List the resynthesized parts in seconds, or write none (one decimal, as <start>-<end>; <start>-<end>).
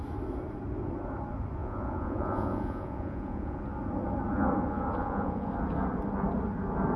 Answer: 1.6-3.6; 5.0-5.5